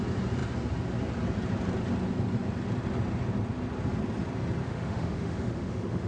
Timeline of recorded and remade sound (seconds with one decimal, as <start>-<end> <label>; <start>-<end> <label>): 0.0-4.6 recorded; 4.6-6.1 remade